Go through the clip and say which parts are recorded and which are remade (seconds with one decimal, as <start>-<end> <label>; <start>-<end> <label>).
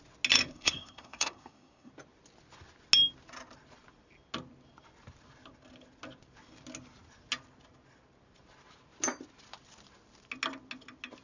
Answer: 0.0-0.5 recorded; 0.5-1.9 remade; 1.9-11.2 recorded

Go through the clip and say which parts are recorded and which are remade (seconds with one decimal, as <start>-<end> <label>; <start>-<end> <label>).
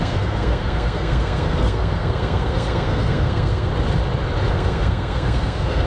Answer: 0.0-3.7 remade; 3.7-4.5 recorded; 4.5-5.9 remade